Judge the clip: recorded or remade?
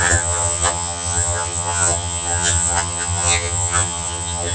remade